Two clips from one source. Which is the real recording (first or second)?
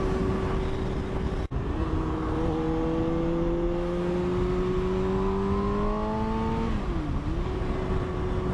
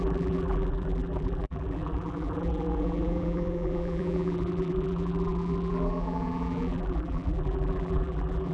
first